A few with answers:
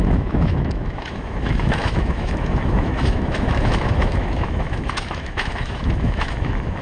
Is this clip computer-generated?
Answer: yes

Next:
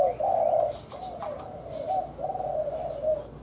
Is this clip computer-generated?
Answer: no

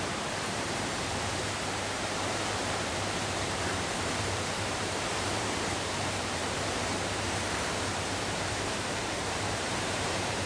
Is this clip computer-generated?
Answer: yes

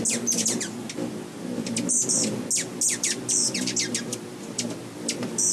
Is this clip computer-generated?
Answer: no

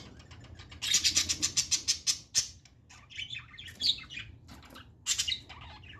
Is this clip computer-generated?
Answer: no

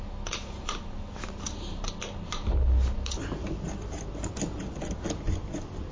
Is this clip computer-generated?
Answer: no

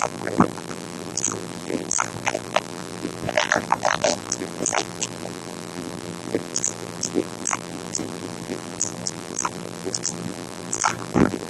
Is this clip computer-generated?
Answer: yes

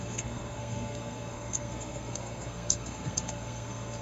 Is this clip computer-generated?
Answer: yes